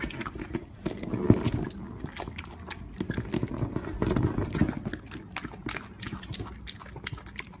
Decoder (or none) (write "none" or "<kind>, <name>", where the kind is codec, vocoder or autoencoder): none